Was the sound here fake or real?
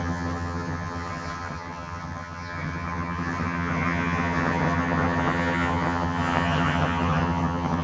fake